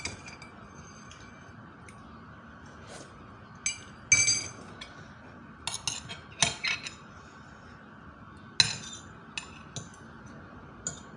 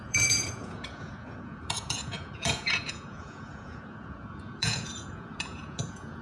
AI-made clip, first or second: second